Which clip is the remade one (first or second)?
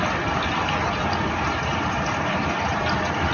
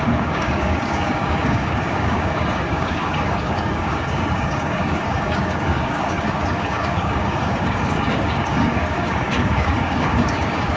second